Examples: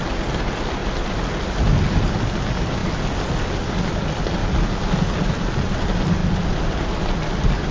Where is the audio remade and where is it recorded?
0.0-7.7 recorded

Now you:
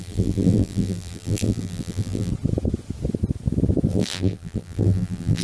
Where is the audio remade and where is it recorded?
0.0-2.3 remade; 2.3-3.9 recorded; 3.9-5.4 remade

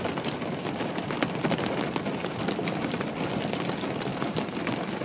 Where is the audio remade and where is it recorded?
0.0-4.1 recorded; 4.1-5.0 remade

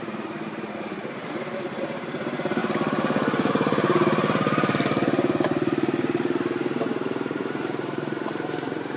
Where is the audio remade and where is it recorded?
0.0-2.6 remade; 2.6-3.5 recorded; 3.5-9.0 remade